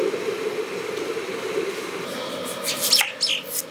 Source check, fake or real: real